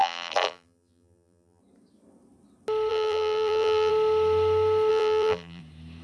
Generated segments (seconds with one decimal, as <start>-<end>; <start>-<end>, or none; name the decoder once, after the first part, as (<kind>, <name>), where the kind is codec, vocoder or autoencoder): 0.0-1.6 (vocoder, BigVGAN v2); 2.9-3.9; 4.9-5.6